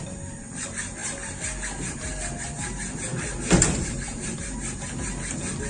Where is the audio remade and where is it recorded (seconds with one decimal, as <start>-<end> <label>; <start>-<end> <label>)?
0.0-5.7 recorded